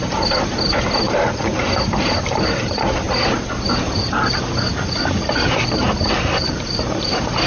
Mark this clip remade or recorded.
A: recorded